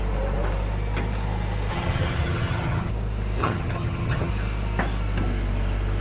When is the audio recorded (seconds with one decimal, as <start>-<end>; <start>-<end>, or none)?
0.0-1.7; 2.9-3.4; 4.3-6.0